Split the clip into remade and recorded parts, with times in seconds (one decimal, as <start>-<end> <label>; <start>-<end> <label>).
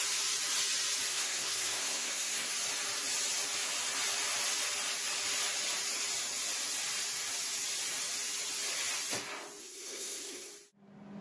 0.0-1.1 recorded; 1.1-2.5 remade; 2.5-9.6 recorded; 9.6-10.5 remade; 10.5-11.2 recorded